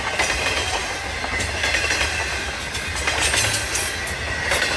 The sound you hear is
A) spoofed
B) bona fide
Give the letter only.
B